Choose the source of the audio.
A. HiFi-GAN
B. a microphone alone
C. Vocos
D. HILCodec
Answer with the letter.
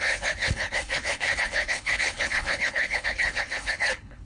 D